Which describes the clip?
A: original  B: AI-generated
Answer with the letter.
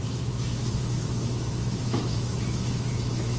B